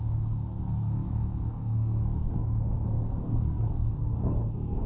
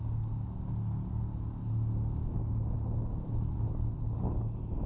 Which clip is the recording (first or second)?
second